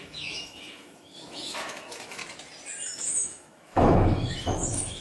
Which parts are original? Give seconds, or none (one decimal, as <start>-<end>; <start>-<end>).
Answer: 2.2-2.9